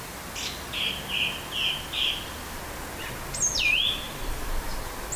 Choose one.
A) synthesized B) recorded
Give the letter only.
B